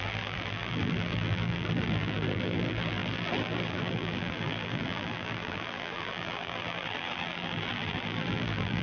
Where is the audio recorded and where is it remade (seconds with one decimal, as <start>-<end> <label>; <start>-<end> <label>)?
0.0-8.8 remade